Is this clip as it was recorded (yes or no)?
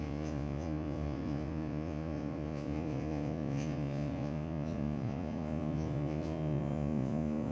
no